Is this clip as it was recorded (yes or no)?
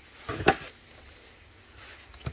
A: yes